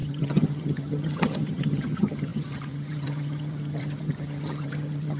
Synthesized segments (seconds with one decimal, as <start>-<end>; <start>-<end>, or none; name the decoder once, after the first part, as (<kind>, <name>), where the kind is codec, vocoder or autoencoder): 0.0-5.2 (vocoder, HiFi-GAN)